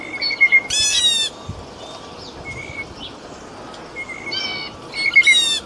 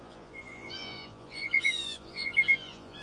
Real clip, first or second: first